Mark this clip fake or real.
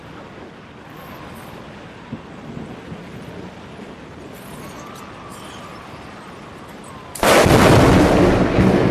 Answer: real